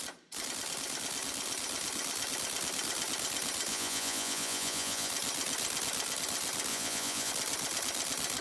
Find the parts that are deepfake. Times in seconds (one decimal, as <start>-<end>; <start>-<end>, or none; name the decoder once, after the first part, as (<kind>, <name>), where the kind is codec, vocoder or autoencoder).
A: 3.7-5.1 (vocoder, Vocos); 6.7-7.3

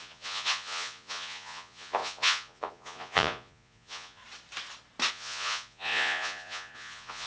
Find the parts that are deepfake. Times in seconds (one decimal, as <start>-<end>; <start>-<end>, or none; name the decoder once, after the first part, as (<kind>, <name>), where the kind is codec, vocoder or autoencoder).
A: 0.0-4.2 (vocoder, Vocos); 5.1-7.3